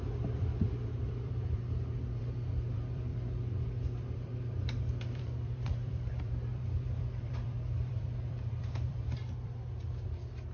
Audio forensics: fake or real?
fake